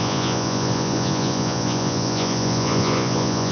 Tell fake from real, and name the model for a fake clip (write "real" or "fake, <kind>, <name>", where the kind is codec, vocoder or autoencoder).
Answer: fake, vocoder, Vocos